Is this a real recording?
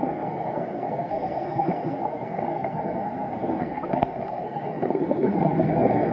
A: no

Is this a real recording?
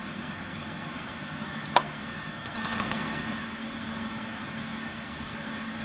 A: no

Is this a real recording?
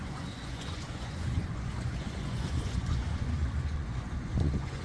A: no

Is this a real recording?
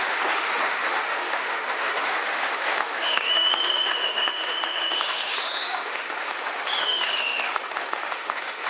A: no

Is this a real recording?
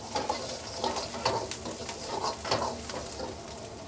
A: yes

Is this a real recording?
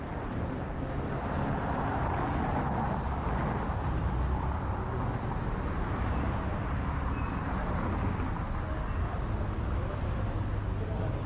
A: yes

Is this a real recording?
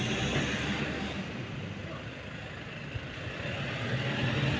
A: yes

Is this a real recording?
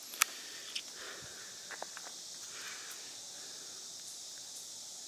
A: yes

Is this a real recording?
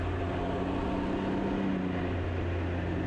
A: yes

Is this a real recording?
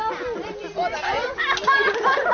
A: yes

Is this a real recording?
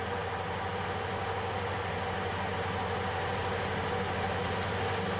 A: yes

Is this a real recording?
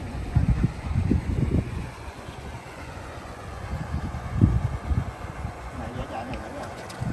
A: no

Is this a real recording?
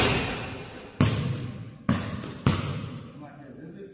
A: yes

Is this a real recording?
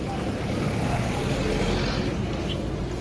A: yes